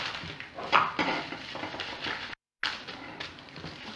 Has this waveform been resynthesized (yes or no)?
no